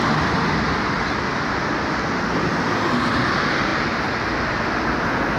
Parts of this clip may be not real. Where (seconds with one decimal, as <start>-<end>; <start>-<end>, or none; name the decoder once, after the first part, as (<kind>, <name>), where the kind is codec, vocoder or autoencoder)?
none